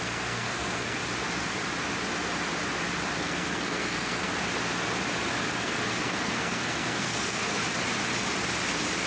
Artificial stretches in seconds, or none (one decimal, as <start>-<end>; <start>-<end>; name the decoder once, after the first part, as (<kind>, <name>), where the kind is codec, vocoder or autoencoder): 0.0-1.0 (codec, SNAC); 3.2-4.3; 5.5-7.6